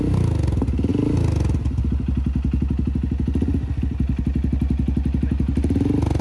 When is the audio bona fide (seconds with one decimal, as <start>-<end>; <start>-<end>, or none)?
0.0-6.2